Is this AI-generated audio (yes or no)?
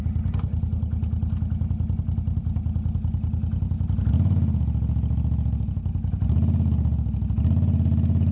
no